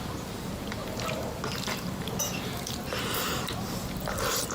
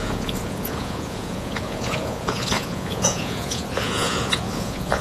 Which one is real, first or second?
first